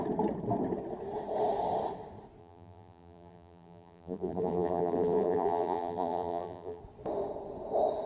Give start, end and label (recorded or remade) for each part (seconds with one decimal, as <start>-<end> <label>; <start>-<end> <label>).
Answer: 0.0-2.4 recorded; 2.4-6.8 remade; 6.8-8.1 recorded